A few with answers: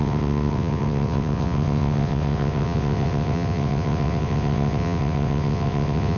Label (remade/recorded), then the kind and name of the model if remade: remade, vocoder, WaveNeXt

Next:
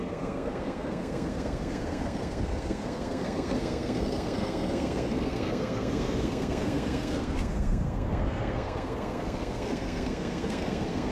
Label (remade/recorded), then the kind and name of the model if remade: remade, codec, SNAC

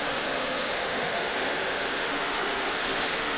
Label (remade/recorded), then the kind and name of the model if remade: remade, autoencoder, DAC-VAE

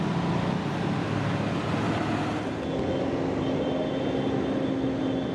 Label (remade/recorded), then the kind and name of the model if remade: recorded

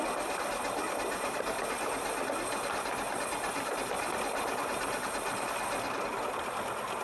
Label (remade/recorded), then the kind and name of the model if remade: recorded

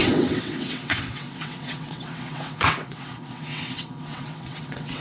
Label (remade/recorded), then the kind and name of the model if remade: remade, vocoder, WaveNeXt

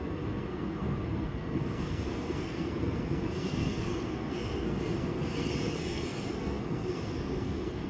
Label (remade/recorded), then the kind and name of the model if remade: remade, codec, SNAC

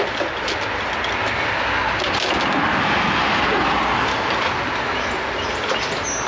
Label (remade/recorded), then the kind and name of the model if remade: recorded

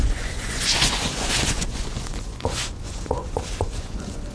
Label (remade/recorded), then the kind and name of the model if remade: remade, vocoder, Vocos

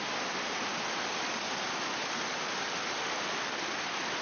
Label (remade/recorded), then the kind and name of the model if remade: recorded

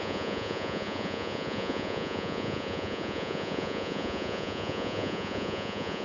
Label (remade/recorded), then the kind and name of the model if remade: remade, vocoder, Vocos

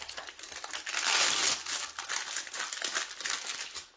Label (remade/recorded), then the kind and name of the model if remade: recorded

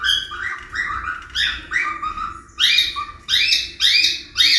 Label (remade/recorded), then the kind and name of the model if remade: recorded